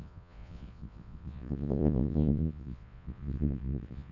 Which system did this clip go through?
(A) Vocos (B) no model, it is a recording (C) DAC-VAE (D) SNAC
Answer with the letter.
A